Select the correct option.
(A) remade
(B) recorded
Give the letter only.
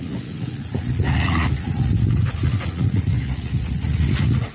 A